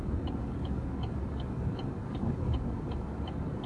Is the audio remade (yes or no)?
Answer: yes